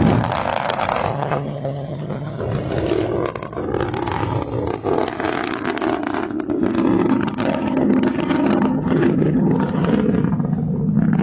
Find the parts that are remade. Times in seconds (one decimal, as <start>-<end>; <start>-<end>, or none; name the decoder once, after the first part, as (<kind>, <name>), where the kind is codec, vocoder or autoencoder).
1.1-2.4 (vocoder, HiFi-GAN); 7.0-9.9